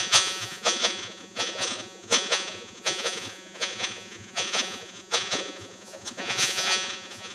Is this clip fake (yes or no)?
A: yes